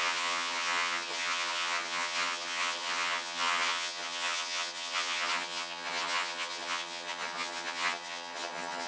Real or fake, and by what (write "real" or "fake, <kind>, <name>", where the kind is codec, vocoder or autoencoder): fake, vocoder, HiFi-GAN